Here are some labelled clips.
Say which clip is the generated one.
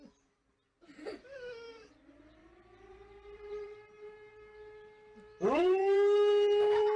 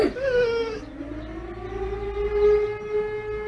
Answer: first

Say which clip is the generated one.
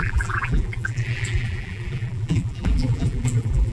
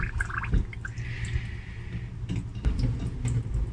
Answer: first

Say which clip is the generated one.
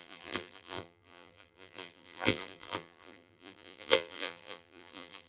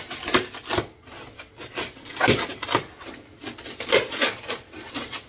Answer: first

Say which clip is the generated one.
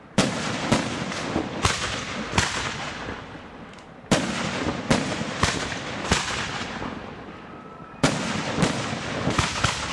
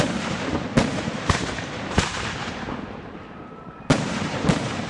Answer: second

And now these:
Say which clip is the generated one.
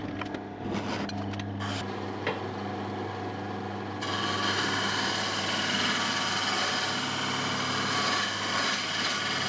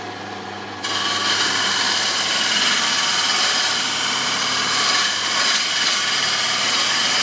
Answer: second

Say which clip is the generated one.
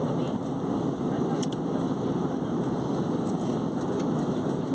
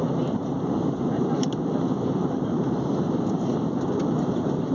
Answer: second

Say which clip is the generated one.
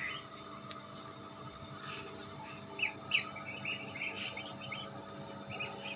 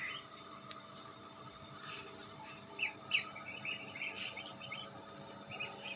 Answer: second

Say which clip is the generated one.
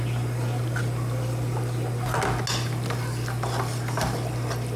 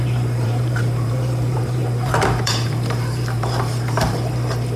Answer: second